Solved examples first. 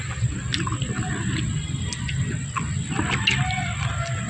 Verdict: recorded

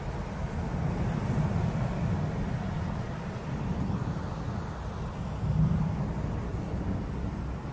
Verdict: recorded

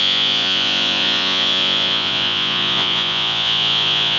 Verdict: remade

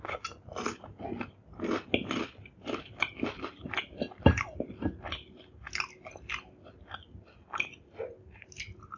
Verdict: recorded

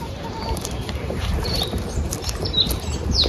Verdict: remade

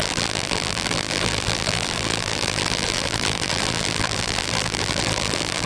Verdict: remade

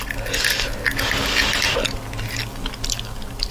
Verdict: recorded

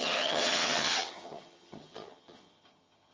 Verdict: remade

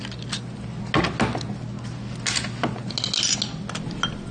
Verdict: recorded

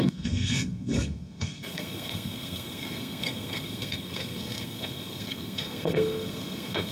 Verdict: remade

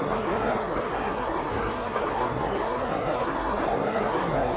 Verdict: remade